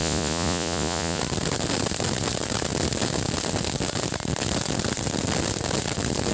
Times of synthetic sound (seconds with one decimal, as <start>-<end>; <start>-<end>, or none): 0.0-1.2